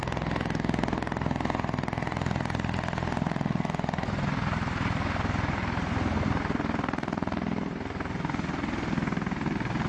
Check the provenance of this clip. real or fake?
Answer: fake